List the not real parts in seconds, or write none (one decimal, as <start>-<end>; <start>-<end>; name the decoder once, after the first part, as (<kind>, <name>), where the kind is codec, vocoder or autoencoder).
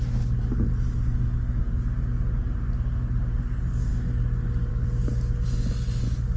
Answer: none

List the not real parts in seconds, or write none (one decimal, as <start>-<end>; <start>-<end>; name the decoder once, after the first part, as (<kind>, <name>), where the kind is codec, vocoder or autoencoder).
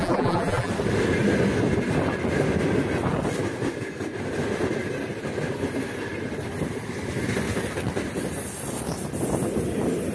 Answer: 0.0-0.7 (vocoder, BigVGAN v2)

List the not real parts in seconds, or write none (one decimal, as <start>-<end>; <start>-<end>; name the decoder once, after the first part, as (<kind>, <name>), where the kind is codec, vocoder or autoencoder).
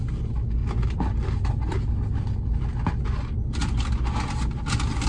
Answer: none